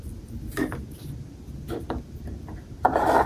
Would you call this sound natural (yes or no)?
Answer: yes